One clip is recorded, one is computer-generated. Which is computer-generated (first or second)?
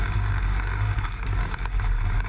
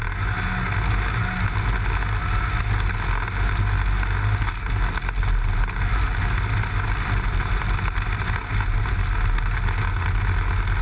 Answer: first